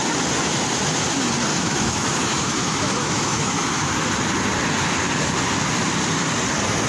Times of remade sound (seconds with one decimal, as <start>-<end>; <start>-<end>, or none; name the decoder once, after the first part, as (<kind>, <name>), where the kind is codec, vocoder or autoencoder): 1.5-3.9 (autoencoder, DAC-VAE)